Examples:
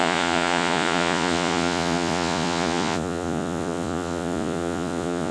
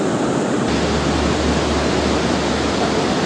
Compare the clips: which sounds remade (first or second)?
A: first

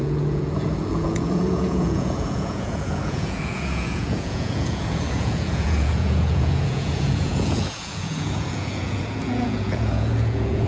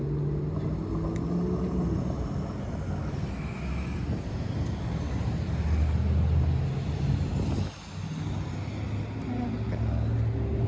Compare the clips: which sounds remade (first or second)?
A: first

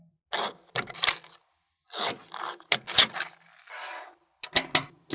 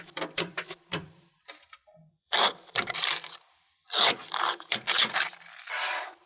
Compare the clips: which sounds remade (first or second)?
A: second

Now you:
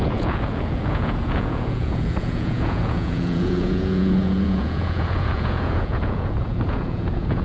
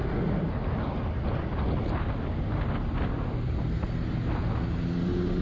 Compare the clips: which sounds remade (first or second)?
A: first